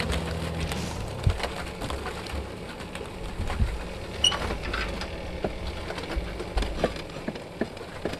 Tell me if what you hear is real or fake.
real